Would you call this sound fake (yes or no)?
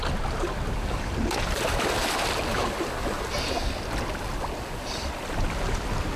no